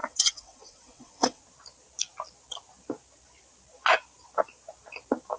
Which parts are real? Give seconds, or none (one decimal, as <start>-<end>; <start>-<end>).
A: 1.4-5.4